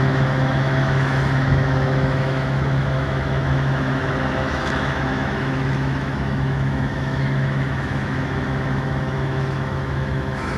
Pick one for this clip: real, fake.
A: fake